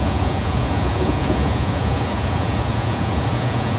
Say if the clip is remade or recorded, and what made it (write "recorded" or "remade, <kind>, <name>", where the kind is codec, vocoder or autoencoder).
remade, vocoder, Vocos